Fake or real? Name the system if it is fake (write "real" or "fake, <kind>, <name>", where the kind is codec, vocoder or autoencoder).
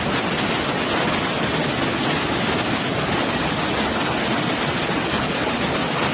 real